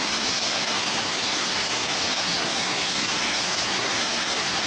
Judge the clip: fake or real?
fake